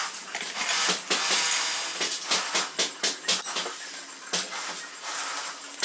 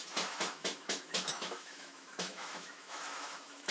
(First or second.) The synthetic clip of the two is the second